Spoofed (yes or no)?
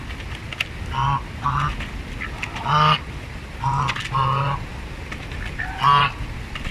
no